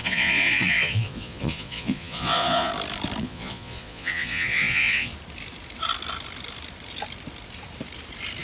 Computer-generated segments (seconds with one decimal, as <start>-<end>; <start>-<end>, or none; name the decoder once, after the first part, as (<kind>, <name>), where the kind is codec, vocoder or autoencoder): 0.0-2.7 (vocoder, Vocos); 3.2-5.1